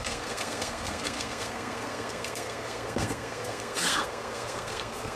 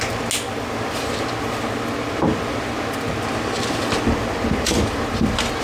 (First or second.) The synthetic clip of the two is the first